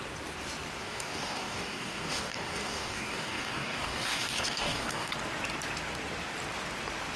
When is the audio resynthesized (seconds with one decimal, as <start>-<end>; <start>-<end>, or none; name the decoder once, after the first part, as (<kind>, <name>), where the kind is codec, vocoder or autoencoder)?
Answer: 0.8-5.1 (codec, DAC)